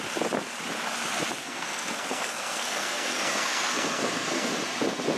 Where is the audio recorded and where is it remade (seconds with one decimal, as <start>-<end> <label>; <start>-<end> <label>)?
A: 0.0-1.4 recorded; 1.4-4.5 remade; 4.5-5.2 recorded